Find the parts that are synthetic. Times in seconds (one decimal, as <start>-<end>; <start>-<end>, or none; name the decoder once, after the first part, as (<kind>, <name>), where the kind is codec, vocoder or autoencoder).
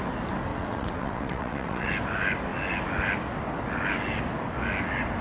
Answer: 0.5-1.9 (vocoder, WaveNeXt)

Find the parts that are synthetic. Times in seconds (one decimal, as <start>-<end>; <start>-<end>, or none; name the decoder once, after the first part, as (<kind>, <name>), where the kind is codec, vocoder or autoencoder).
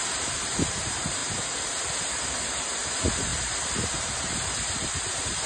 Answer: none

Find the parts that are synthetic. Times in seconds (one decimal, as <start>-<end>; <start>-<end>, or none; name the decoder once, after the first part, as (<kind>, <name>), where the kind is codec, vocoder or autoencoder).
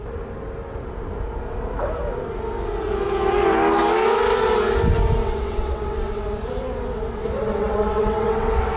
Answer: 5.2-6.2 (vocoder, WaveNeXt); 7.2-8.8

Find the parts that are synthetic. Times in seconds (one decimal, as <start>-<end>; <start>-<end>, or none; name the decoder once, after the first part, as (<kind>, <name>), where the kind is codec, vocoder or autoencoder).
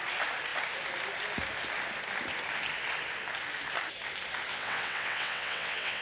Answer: 4.5-6.0 (vocoder, WaveNeXt)